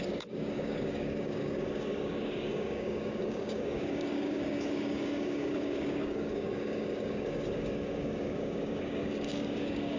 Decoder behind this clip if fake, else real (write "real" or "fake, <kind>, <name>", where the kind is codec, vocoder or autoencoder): fake, codec, DAC